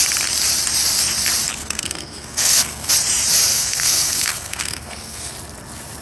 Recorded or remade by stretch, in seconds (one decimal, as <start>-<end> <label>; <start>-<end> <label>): 0.0-1.6 recorded; 1.6-2.9 remade; 2.9-3.5 recorded; 3.5-5.3 remade; 5.3-6.0 recorded